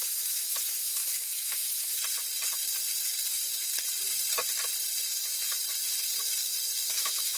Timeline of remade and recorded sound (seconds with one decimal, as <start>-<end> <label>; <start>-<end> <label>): 0.0-2.0 remade; 2.0-3.3 recorded; 3.3-3.7 remade; 3.7-6.9 recorded; 6.9-7.4 remade